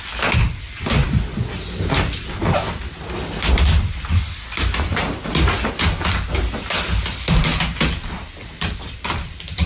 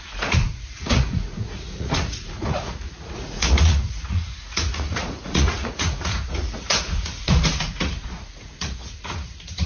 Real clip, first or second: first